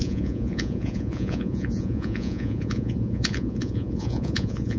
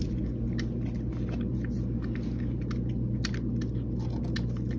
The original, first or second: second